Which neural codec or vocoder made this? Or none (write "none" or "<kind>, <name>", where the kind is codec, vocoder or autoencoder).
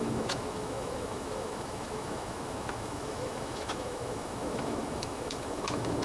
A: autoencoder, DAC-VAE